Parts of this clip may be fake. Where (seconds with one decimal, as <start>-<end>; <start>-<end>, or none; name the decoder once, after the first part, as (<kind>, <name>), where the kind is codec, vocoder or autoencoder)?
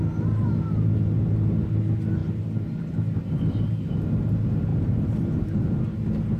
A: 4.7-5.8 (vocoder, BigVGAN v2)